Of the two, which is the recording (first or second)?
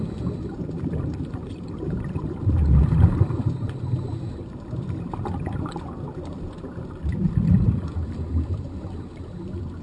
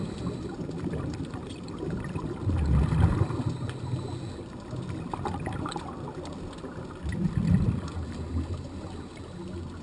second